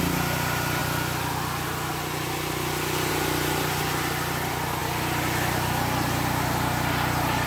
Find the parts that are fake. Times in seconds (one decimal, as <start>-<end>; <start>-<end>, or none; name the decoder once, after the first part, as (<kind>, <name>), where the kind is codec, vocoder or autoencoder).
none